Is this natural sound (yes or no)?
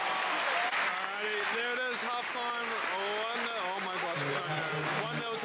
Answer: yes